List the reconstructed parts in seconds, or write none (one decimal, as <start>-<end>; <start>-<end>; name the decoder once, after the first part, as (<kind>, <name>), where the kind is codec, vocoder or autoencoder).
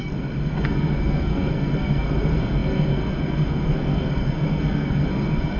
0.0-5.6 (codec, SNAC)